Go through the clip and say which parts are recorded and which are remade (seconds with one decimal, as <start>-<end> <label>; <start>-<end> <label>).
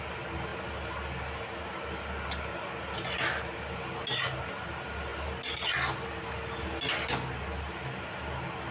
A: 0.0-8.7 recorded